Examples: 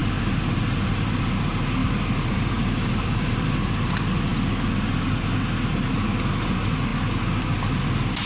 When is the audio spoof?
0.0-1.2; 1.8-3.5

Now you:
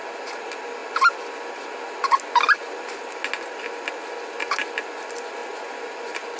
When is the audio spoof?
5.4-5.9

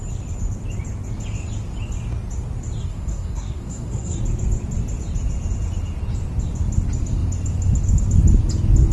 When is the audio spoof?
2.8-4.2

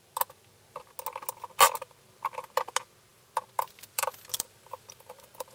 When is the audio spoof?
3.1-5.5

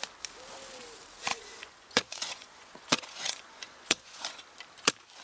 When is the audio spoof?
1.3-4.4

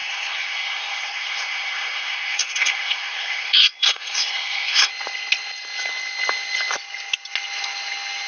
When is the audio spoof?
0.0-4.9

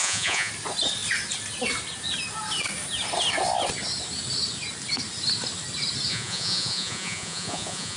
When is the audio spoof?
0.0-0.5; 6.1-8.0